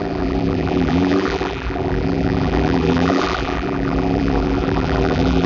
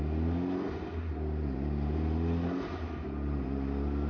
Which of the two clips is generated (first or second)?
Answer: first